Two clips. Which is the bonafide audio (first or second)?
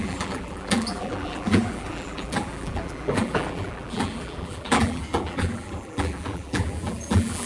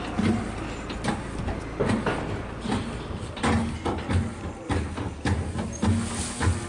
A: second